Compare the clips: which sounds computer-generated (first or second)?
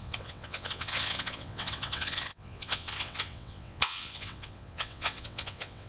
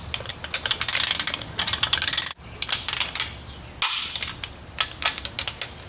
first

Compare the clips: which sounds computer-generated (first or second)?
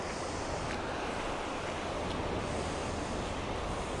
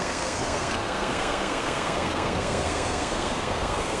second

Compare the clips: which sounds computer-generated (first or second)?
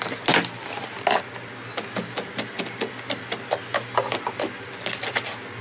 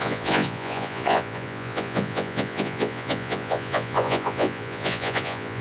second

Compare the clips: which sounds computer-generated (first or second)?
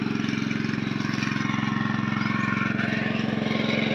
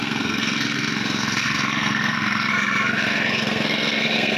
second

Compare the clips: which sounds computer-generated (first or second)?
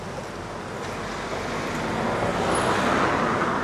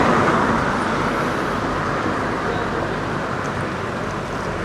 second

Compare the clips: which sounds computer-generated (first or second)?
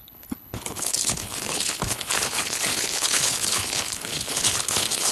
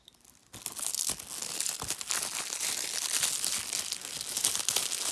first